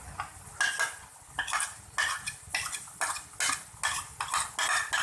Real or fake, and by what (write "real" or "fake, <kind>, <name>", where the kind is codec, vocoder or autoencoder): real